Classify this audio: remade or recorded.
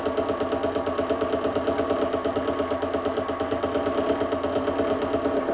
recorded